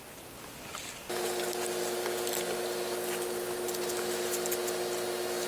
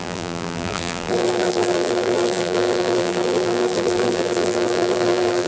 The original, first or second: first